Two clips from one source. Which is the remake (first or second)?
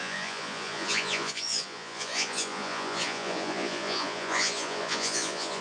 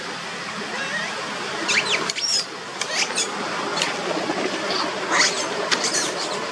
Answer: first